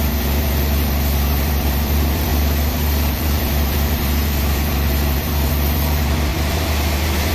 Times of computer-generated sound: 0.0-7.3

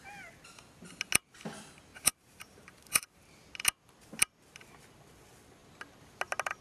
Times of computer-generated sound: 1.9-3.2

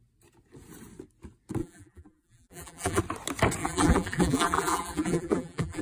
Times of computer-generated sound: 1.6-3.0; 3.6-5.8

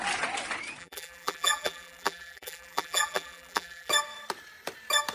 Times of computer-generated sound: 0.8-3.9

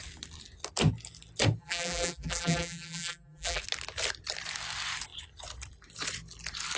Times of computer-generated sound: 1.6-3.6

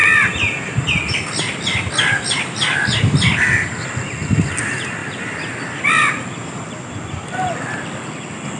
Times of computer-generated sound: none

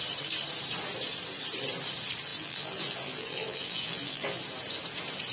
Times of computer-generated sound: 2.3-4.4

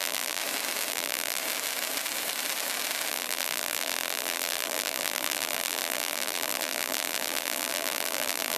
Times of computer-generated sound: 0.0-0.4; 0.9-1.4; 3.1-8.6